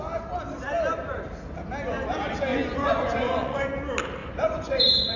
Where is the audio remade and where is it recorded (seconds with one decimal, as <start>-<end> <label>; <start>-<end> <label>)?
0.0-2.5 recorded; 2.5-3.6 remade; 3.6-4.2 recorded; 4.2-5.2 remade